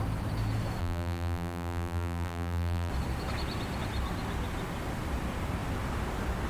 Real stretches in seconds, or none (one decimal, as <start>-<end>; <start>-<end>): 0.0-0.8; 2.9-6.5

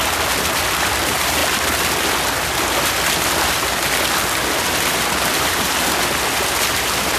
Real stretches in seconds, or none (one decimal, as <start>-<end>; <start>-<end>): 0.0-7.2

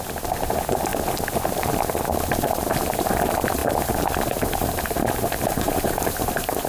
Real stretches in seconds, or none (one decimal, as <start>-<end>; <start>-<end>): 0.9-2.5

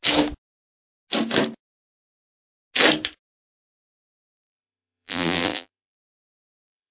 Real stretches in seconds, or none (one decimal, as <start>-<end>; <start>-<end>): 0.0-4.1